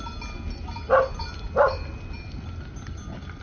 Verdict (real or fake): real